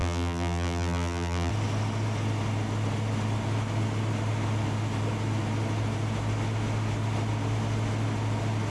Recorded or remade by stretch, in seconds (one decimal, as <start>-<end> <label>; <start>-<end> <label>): 0.0-1.5 remade; 1.5-8.7 recorded